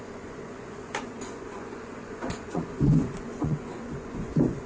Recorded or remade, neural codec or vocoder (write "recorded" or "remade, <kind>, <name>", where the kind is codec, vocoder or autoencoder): remade, vocoder, Vocos